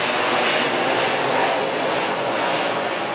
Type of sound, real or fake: fake